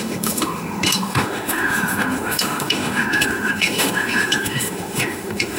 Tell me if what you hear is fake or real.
fake